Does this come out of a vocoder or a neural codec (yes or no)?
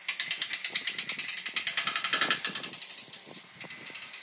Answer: no